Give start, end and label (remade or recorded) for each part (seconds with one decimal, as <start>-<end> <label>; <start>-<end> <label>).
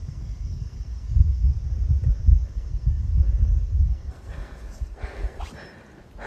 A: 0.0-1.5 remade; 1.5-2.3 recorded; 2.3-5.4 remade; 5.4-6.3 recorded